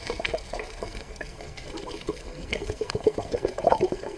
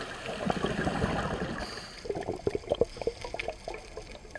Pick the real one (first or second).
second